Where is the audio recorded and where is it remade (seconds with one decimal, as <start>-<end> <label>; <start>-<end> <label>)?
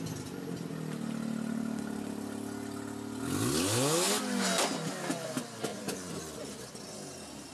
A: 0.0-5.7 recorded; 5.7-6.6 remade; 6.6-7.5 recorded